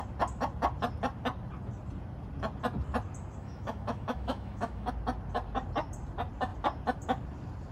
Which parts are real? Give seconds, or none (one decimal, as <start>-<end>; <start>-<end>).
0.0-3.4; 4.9-7.7